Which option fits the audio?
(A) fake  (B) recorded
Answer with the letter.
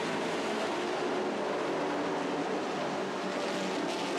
B